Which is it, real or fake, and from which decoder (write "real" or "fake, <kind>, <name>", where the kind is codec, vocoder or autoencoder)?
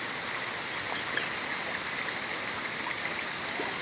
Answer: real